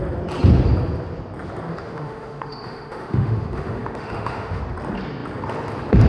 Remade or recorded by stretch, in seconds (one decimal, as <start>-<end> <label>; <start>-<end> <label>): 0.0-1.7 recorded; 1.7-4.6 remade; 4.6-6.1 recorded